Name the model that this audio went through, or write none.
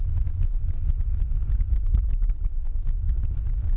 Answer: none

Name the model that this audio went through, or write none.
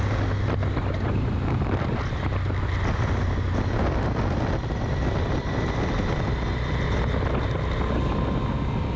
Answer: none